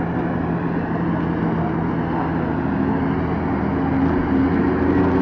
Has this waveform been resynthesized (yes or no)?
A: no